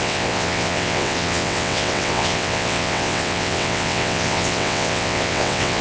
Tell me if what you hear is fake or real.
fake